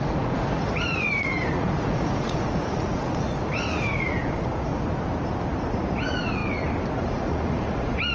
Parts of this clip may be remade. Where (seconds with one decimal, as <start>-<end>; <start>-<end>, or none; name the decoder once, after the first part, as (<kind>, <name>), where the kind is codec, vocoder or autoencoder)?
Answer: 0.0-4.7 (vocoder, Vocos); 5.7-6.4; 7.1-8.1